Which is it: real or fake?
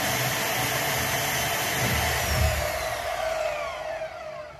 real